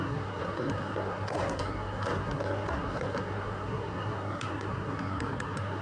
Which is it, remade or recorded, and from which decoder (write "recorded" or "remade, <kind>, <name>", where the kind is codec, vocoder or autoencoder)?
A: remade, codec, SNAC